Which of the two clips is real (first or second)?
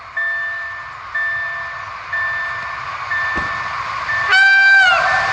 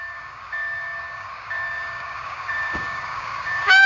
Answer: first